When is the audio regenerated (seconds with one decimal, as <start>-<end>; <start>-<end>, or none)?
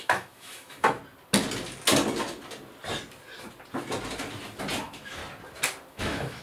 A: 0.0-1.0; 4.8-5.2; 5.9-6.4